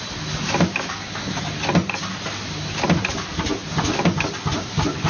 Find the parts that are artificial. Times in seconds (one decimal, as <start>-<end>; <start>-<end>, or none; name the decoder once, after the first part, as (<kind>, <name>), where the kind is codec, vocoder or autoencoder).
none